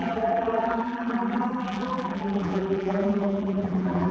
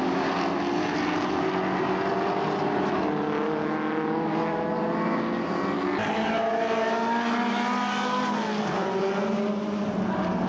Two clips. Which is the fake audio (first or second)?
first